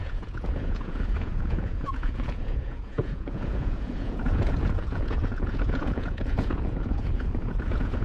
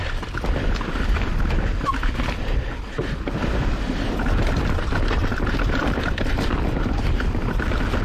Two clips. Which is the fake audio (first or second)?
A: first